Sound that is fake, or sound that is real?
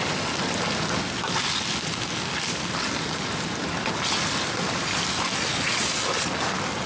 real